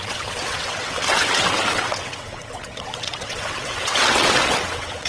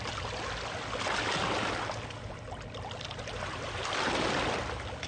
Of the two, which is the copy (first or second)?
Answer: first